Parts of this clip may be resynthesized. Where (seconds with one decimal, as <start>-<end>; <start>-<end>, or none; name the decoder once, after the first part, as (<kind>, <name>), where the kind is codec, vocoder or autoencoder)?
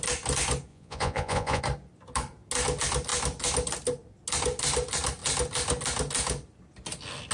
0.7-1.6 (vocoder, Vocos)